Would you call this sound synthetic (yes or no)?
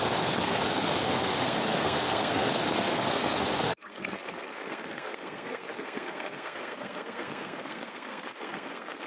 yes